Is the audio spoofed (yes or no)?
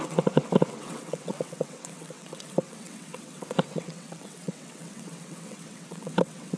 yes